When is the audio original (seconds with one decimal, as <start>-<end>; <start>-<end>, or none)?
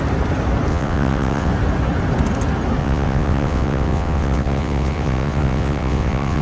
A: 0.0-0.7; 1.5-2.8